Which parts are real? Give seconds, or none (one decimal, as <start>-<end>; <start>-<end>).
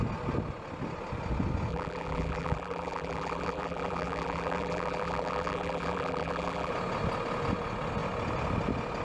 0.0-1.7; 6.7-9.0